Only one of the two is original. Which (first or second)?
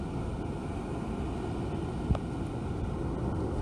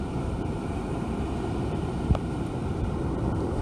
first